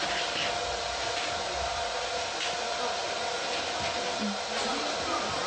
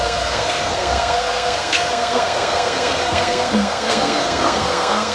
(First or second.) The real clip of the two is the first